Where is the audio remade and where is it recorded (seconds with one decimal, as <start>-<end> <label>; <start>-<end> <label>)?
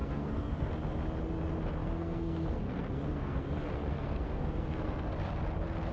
0.0-0.7 remade; 0.7-1.8 recorded; 1.8-5.1 remade; 5.1-5.9 recorded